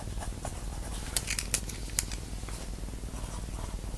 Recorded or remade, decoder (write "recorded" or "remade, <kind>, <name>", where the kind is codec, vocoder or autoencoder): recorded